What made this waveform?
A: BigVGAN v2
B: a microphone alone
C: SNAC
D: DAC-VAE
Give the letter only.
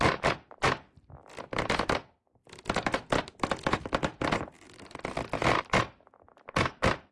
B